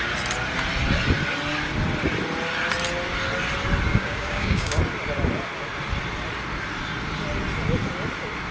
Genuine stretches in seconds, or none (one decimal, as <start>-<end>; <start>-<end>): 0.0-3.9; 4.8-8.5